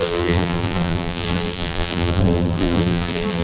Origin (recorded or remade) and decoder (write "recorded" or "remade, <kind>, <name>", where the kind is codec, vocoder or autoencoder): remade, vocoder, BigVGAN v2